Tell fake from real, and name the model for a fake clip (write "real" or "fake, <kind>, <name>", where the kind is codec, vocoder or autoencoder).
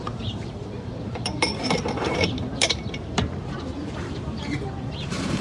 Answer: fake, vocoder, BigVGAN v2